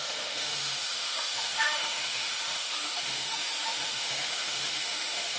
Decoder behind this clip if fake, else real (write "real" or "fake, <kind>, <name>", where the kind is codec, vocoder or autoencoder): fake, autoencoder, DAC-VAE